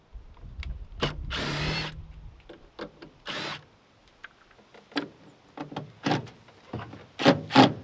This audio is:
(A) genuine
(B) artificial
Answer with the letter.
A